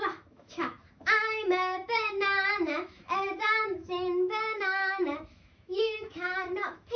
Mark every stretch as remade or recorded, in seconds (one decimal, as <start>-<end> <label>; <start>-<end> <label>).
0.0-7.0 remade